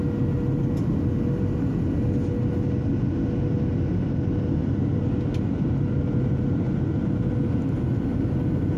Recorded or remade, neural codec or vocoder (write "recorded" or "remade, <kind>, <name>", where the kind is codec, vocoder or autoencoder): recorded